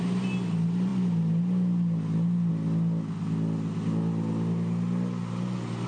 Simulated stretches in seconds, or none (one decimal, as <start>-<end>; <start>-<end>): none